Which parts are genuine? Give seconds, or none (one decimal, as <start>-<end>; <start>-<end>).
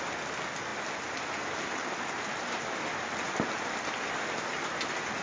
0.0-5.2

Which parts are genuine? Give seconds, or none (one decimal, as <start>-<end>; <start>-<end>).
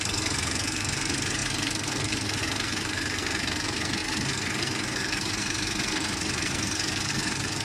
none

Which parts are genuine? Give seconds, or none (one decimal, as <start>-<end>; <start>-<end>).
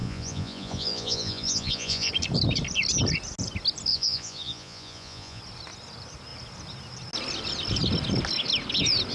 2.1-3.9; 5.4-9.1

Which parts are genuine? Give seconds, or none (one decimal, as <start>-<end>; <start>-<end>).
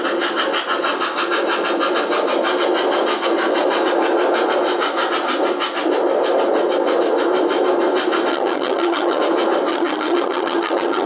0.0-8.3; 9.2-9.7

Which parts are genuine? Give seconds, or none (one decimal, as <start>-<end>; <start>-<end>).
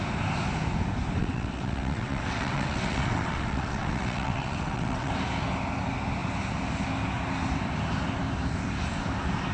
0.0-1.2; 5.1-9.5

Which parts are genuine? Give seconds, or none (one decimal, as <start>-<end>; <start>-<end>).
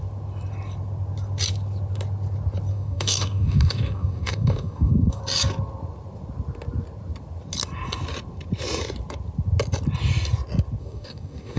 0.0-2.7; 5.2-10.8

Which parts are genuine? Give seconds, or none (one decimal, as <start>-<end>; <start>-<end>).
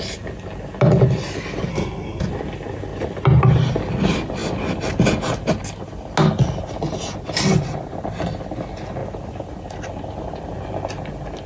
0.0-1.7; 2.2-11.5